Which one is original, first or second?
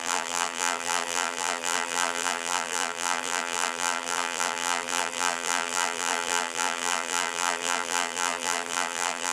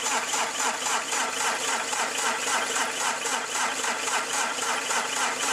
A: second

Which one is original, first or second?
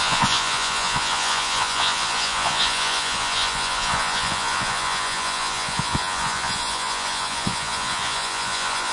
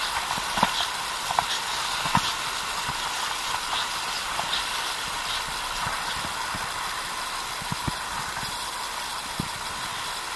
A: second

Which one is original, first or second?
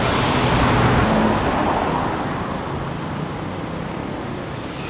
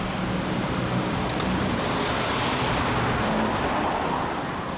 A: first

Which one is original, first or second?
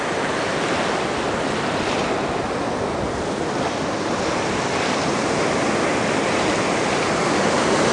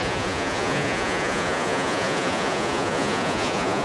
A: first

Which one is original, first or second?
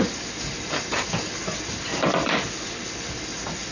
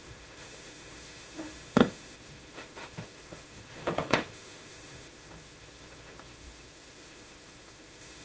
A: first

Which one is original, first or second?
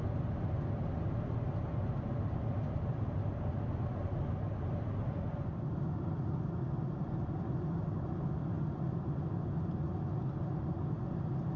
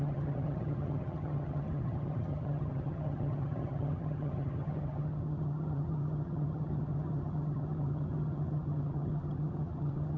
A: first